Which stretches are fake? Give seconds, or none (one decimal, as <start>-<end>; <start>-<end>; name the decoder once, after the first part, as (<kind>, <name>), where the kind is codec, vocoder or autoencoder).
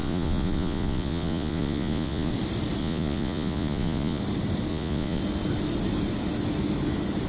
0.0-2.3 (vocoder, Vocos); 2.8-4.2; 4.7-5.2